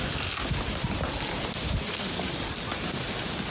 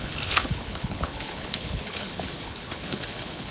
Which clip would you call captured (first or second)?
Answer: first